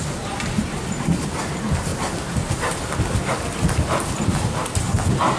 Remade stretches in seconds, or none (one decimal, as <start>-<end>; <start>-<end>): none